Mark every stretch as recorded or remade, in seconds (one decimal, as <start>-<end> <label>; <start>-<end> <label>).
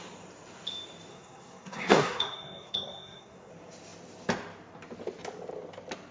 0.0-1.1 recorded; 1.1-3.5 remade; 3.5-6.1 recorded